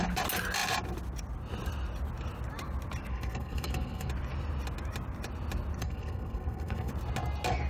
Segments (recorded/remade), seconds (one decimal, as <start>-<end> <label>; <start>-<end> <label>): 0.0-3.1 recorded; 3.1-4.1 remade; 4.1-5.8 recorded; 5.8-6.9 remade; 6.9-7.7 recorded